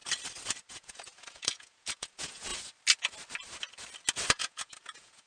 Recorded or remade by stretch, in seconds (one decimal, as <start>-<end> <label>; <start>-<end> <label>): 0.0-0.7 recorded; 0.7-2.5 remade; 2.5-4.3 recorded; 4.3-5.3 remade